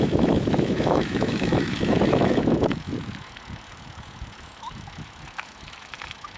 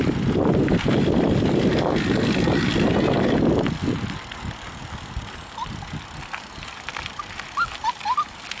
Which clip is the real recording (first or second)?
second